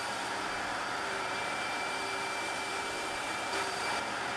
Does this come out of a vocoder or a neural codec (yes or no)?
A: yes